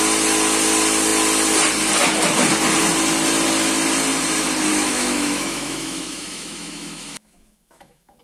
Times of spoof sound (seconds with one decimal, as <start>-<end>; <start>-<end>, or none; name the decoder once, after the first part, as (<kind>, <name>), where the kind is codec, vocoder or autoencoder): 4.7-8.2 (autoencoder, DAC-VAE)